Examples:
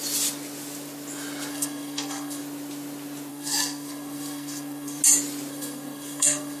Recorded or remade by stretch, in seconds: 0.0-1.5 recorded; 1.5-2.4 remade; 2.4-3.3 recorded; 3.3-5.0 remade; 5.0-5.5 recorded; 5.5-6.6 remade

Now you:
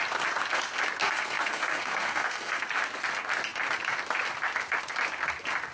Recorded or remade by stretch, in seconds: 0.0-1.0 recorded; 1.0-2.6 remade; 2.6-5.7 recorded